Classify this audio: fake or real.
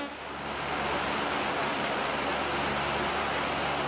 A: real